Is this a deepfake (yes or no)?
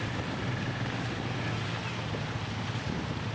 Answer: no